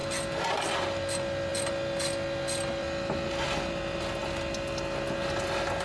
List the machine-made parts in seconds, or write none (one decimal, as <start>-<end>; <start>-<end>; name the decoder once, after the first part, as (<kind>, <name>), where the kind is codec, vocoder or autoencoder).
none